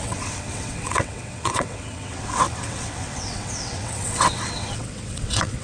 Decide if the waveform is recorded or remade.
remade